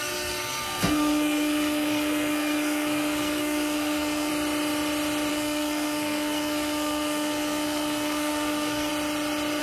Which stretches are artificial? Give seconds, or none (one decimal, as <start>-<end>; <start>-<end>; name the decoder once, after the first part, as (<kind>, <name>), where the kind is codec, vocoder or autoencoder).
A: 0.0-4.3 (codec, SNAC); 5.3-8.9